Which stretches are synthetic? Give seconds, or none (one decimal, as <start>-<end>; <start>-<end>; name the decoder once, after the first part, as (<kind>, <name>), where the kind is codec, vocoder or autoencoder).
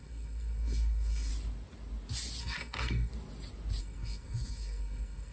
0.0-1.3 (codec, SNAC); 2.4-3.1; 3.8-5.3